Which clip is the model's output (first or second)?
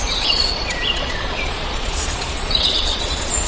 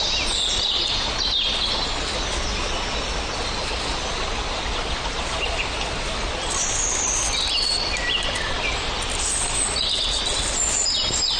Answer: first